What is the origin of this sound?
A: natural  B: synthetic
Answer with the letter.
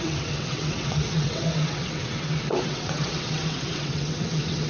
B